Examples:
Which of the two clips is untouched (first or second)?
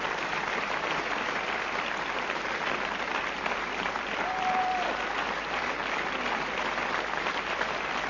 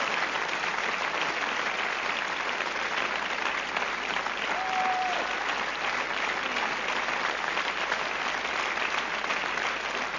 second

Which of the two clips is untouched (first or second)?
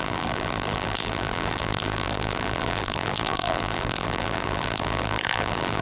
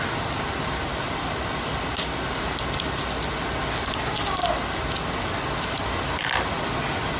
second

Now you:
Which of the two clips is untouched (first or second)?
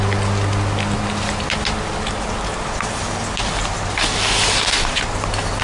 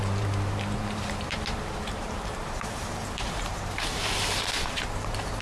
first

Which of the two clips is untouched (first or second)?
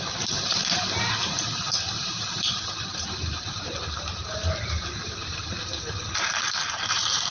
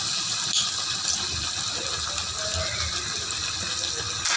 second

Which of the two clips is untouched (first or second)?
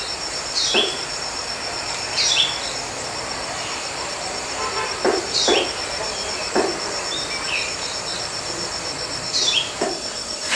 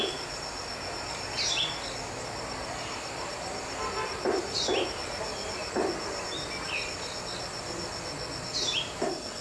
second